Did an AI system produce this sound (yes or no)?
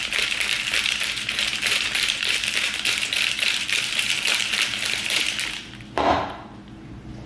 yes